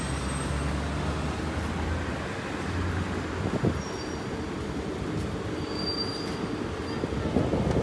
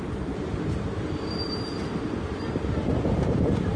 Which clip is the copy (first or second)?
second